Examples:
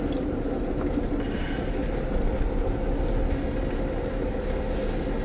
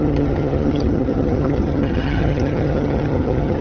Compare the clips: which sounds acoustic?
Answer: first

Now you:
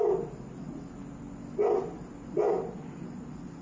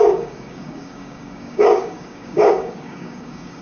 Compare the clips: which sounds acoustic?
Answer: first